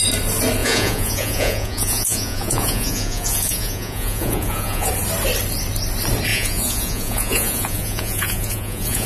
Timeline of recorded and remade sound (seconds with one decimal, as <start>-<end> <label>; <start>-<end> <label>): 0.0-0.6 recorded; 0.6-4.9 remade; 4.9-6.3 recorded; 6.3-9.1 remade